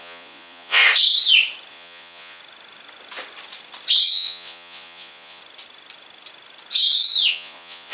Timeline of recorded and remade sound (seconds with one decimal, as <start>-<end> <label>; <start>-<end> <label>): 0.0-0.8 remade; 0.8-1.7 recorded; 1.7-2.4 remade; 2.4-4.1 recorded; 4.1-5.4 remade; 5.4-7.3 recorded; 7.3-7.9 remade